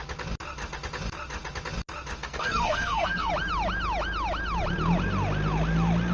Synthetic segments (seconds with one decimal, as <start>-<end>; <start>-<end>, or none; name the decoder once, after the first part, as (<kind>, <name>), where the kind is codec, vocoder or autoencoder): 2.2-3.3 (codec, SNAC)